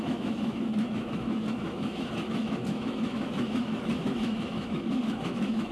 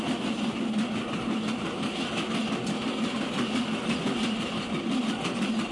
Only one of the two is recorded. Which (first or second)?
second